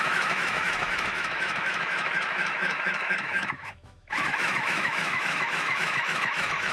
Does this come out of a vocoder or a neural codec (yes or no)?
yes